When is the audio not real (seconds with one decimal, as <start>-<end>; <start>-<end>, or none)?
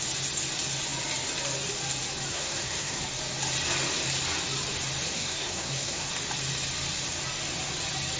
2.3-3.0; 5.1-6.1